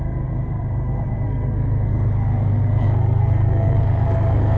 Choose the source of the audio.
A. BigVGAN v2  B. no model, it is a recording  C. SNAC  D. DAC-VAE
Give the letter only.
C